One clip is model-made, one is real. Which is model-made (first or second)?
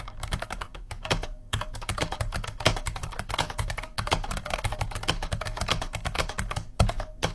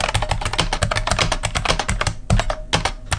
first